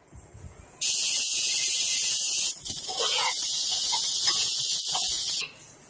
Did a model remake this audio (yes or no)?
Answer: yes